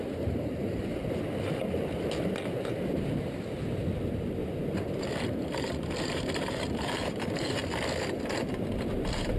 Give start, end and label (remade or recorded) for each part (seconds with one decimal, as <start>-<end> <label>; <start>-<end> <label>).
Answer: 0.0-0.9 remade; 0.9-2.9 recorded; 2.9-4.4 remade; 4.4-5.2 recorded; 5.2-7.6 remade; 7.6-8.8 recorded; 8.8-9.4 remade